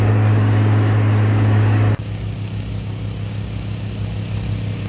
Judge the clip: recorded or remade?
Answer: remade